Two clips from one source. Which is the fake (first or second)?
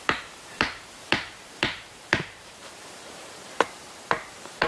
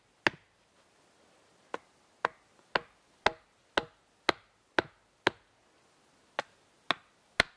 first